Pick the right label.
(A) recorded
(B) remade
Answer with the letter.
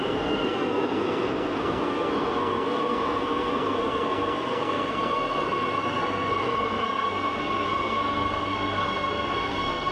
B